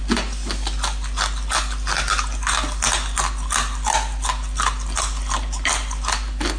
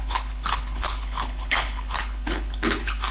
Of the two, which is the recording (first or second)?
first